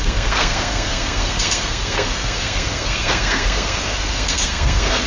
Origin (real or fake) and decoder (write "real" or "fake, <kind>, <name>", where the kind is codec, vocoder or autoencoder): fake, codec, SNAC